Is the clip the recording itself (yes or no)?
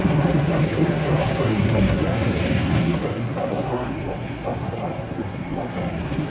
no